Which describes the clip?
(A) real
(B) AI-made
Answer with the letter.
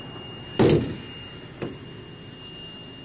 A